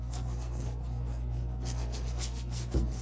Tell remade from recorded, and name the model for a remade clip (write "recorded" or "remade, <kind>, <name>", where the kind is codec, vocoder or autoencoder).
remade, codec, SNAC